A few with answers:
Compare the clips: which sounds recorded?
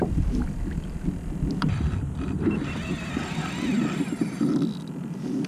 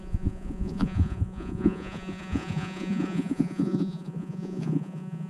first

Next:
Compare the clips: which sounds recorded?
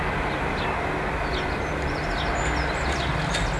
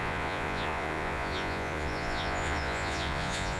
first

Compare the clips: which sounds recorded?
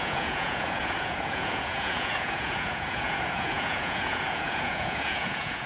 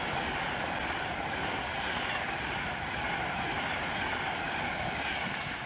second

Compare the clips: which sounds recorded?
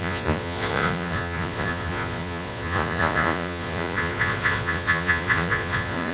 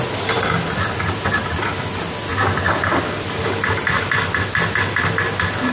second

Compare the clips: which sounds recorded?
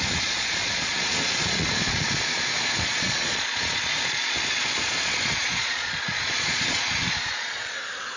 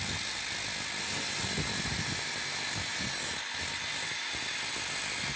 second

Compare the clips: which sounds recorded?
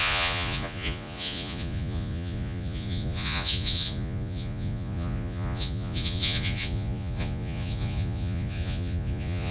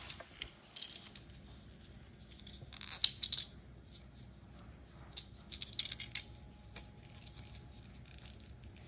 second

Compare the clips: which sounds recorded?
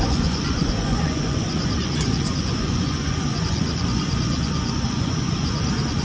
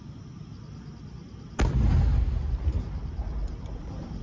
second